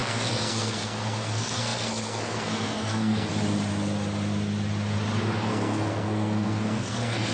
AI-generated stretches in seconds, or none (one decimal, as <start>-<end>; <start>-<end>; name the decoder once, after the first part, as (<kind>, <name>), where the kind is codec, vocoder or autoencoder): 0.0-3.3 (codec, SNAC); 5.5-7.3